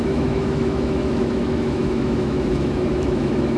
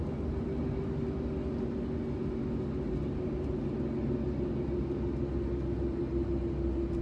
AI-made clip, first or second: first